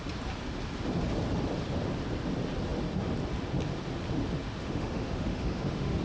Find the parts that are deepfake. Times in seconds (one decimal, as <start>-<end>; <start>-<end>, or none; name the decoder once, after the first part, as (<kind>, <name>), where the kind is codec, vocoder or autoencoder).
4.6-6.0 (autoencoder, DAC-VAE)